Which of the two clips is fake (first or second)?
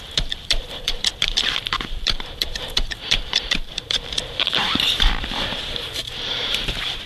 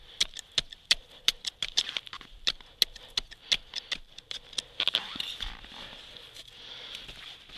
first